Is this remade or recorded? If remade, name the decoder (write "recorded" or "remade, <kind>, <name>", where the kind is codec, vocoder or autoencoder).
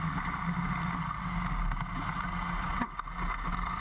recorded